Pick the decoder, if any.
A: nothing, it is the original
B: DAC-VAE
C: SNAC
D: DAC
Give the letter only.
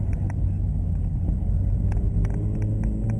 A